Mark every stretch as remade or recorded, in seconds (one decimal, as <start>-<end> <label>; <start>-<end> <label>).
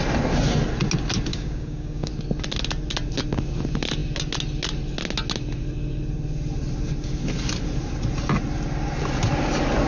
0.0-1.3 recorded; 1.3-2.1 remade; 2.1-9.9 recorded